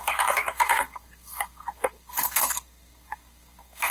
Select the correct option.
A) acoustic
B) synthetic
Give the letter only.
B